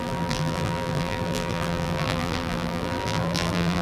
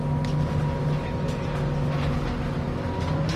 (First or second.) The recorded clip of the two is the second